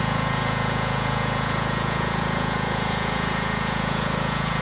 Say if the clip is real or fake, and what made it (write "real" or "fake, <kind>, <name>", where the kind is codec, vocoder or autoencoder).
fake, vocoder, Vocos